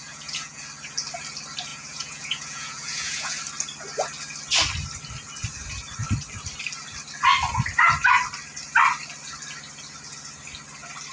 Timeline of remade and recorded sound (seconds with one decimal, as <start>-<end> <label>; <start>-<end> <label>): 0.0-0.6 remade; 0.6-1.7 recorded; 1.7-3.4 remade; 3.4-11.1 recorded